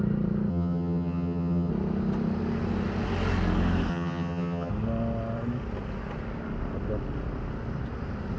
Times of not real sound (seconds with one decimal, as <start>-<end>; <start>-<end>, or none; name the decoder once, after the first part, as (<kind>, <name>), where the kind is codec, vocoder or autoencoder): 0.5-1.7 (vocoder, HiFi-GAN); 3.9-4.7